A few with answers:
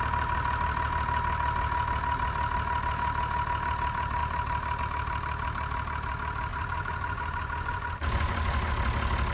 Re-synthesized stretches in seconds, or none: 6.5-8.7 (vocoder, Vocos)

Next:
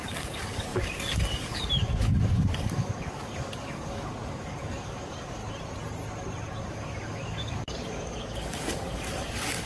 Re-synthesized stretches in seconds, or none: 0.0-5.4 (codec, DAC); 6.7-9.7

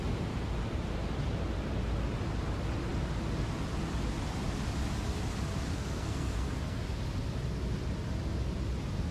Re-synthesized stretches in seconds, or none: 5.7-6.8 (codec, SNAC)

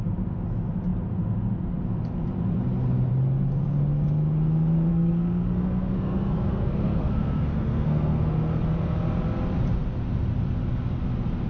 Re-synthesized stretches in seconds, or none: 4.9-8.6 (codec, SNAC)